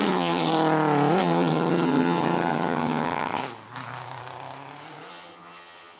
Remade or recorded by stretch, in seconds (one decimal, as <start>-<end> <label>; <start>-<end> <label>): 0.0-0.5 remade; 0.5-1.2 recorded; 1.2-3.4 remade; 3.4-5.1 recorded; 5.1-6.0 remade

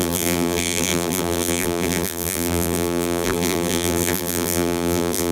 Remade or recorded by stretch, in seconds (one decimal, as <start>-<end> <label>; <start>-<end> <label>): 0.0-5.3 remade

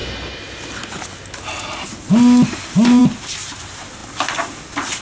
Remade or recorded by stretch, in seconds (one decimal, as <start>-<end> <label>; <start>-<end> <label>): 0.0-5.0 recorded

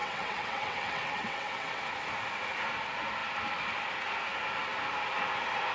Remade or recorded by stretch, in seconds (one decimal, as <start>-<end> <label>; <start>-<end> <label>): 0.0-1.8 remade; 1.8-5.7 recorded

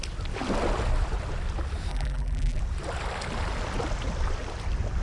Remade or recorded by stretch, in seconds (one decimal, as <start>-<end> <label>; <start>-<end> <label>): 0.0-1.9 recorded; 1.9-2.6 remade; 2.6-5.0 recorded

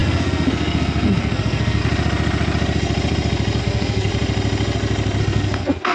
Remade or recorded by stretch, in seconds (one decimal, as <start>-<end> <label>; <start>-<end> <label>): 0.0-1.8 remade; 1.8-3.6 recorded; 3.6-4.1 remade; 4.1-5.2 recorded; 5.2-5.9 remade

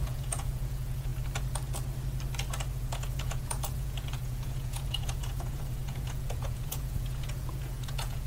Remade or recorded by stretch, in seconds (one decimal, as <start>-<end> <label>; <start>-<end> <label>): 0.0-1.1 remade; 1.1-2.8 recorded; 2.8-8.3 remade

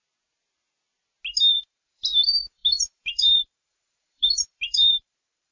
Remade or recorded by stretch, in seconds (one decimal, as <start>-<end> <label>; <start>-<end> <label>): 0.0-1.5 recorded; 1.5-5.5 remade